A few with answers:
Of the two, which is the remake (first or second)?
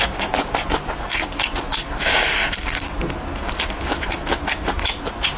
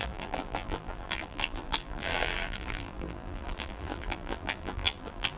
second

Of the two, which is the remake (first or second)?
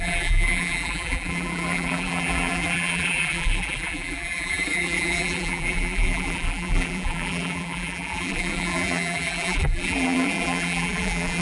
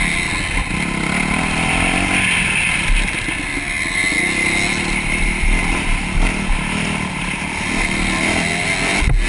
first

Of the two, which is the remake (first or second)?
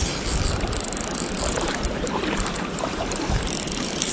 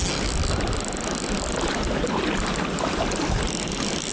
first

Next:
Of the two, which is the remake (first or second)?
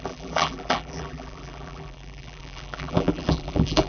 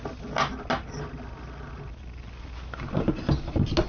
first